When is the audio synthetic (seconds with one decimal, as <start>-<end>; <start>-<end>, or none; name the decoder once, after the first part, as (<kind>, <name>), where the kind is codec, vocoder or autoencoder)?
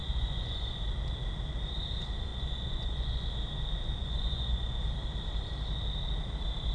0.0-0.8 (vocoder, Vocos); 2.3-3.3; 4.0-4.8